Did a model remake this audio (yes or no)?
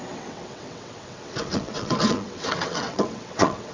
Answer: yes